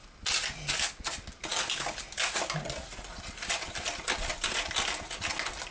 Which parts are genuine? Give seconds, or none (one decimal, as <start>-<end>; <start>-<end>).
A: 0.0-5.7